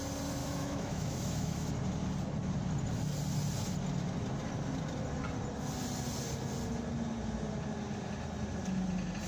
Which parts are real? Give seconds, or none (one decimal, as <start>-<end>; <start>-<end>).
0.0-0.4; 1.7-9.3